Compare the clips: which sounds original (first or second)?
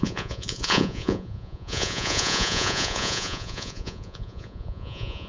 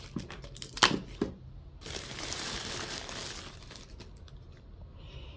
second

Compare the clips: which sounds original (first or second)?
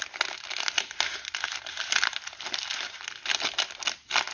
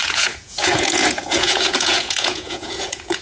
first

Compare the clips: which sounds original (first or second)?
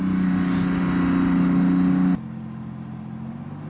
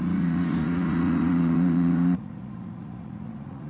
first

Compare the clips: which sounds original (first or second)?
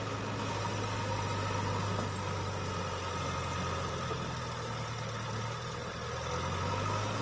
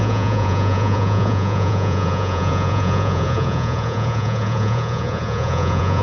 first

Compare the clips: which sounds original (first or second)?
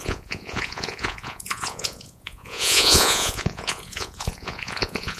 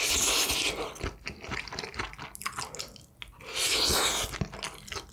second